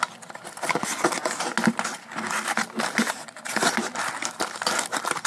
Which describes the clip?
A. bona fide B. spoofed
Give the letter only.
A